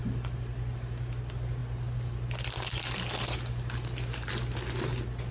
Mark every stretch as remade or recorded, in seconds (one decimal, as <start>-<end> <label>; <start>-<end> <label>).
0.0-5.3 recorded